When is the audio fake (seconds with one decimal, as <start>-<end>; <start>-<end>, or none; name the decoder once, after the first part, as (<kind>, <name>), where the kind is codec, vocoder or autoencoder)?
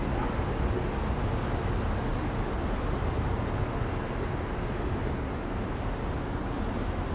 none